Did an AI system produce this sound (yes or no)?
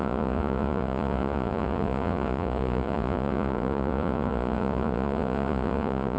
yes